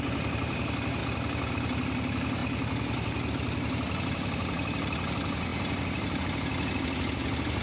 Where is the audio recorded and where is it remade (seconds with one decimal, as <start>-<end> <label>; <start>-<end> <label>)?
0.0-1.0 remade; 1.0-1.5 recorded; 1.5-2.4 remade; 2.4-3.3 recorded; 3.3-7.6 remade